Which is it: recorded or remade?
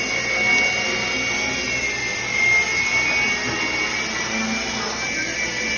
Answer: recorded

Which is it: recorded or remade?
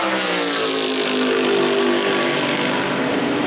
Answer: recorded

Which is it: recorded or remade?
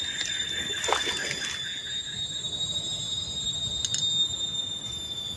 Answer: recorded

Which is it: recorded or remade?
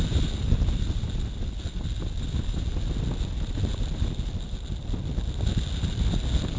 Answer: recorded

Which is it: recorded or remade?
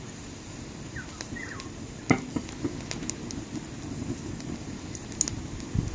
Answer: recorded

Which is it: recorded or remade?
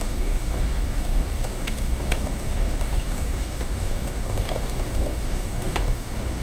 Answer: remade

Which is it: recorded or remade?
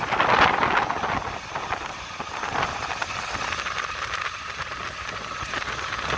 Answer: recorded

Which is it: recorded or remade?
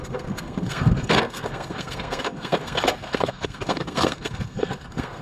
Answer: remade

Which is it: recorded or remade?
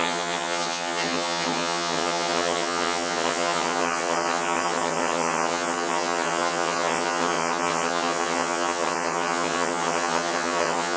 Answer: remade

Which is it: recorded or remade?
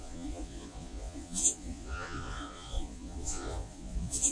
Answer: remade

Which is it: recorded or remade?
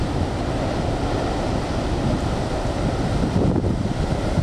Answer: recorded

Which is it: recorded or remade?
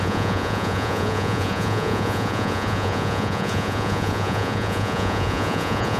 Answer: remade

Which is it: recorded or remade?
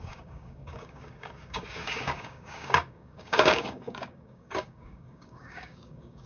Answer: remade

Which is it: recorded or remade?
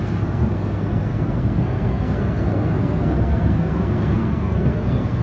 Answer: remade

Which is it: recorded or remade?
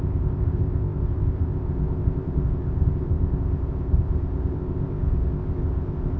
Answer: remade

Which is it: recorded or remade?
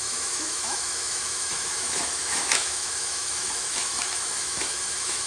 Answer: remade